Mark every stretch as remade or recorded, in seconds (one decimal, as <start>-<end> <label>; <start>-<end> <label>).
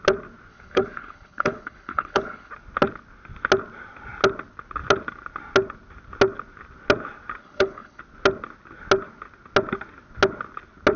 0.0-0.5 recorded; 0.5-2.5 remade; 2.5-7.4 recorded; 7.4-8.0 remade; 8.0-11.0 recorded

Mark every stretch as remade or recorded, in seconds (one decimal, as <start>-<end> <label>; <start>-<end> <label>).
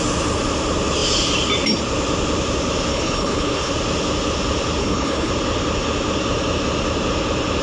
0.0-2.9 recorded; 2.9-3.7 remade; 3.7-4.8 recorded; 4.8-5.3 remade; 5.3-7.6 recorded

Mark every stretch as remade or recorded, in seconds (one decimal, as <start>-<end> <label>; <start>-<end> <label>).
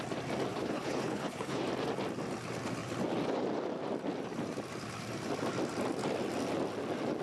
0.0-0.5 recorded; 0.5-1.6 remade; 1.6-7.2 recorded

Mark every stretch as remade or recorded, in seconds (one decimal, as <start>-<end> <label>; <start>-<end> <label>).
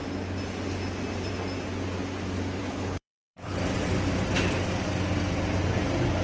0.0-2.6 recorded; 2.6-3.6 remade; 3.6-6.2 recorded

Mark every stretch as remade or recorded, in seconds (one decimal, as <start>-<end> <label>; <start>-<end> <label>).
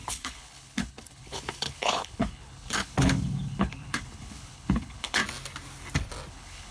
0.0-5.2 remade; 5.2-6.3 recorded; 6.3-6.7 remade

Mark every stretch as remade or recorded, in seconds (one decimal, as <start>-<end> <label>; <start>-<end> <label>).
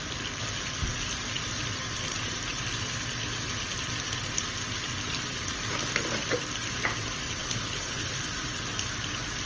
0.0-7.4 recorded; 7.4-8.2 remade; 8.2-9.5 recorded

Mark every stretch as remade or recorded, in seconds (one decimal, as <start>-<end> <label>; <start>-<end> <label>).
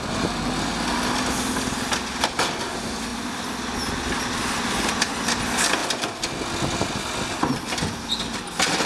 0.0-8.9 recorded